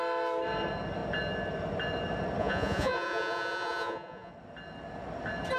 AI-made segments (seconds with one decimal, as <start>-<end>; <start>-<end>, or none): 2.4-4.3